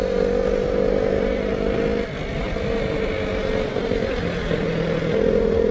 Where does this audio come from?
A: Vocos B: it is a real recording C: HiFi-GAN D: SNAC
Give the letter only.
B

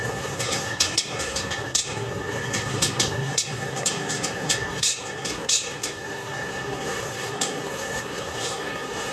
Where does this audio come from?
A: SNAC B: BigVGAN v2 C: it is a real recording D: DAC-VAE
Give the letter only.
A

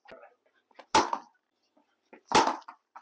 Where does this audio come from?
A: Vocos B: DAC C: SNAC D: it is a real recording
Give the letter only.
D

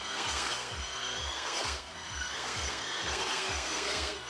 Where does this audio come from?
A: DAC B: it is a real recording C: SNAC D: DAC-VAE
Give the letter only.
C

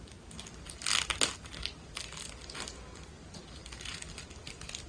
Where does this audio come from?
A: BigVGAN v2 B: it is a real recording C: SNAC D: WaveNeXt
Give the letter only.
B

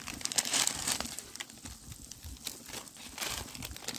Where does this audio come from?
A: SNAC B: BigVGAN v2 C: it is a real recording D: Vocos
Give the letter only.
C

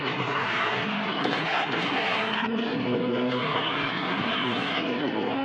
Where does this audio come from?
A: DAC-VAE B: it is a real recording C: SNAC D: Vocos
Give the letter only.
C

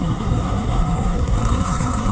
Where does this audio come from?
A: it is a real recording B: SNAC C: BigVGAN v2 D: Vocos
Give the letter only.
B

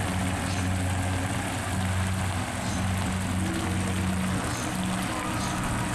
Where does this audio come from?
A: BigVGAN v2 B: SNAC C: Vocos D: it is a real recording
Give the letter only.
D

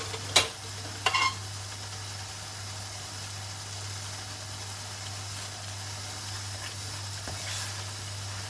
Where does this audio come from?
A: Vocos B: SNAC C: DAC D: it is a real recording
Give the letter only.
D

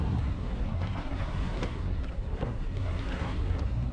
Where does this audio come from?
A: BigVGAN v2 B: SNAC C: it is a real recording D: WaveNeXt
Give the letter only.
B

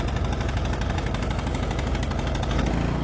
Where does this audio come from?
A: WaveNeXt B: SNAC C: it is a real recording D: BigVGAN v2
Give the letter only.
C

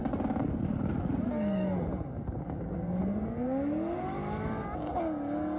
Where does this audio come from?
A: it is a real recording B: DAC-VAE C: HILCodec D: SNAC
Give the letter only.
A